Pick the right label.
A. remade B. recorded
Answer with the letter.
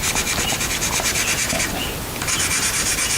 B